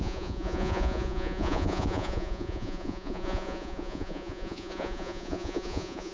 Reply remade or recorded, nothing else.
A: remade